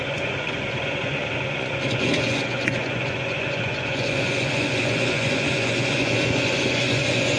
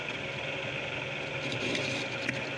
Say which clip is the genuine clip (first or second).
second